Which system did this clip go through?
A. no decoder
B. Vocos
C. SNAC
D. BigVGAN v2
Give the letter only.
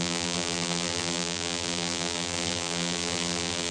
D